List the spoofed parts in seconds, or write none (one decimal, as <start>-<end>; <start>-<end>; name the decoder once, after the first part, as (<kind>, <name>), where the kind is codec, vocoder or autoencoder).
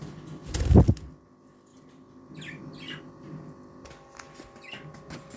none